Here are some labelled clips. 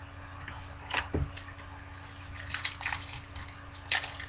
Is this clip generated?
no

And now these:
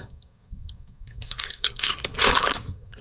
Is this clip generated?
yes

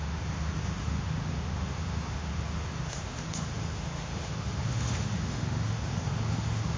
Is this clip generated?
yes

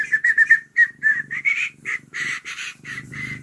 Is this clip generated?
yes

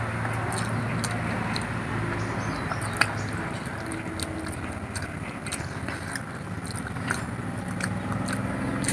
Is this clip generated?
no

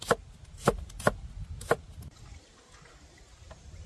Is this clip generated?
no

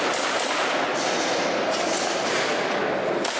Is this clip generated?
no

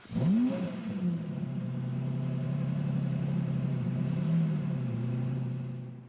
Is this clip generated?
yes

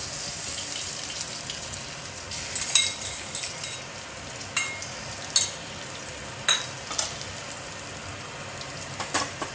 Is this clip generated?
no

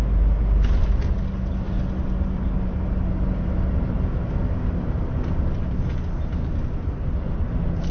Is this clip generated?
no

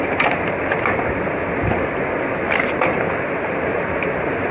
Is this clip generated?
no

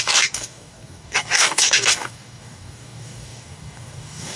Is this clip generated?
yes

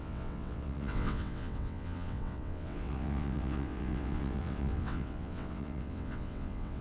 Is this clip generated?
yes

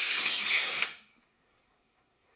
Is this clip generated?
yes